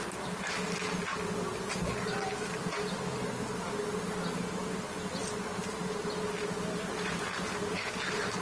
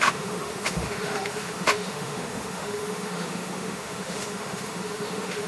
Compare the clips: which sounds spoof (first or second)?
second